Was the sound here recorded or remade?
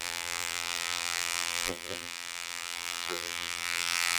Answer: remade